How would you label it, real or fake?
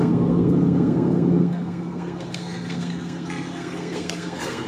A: fake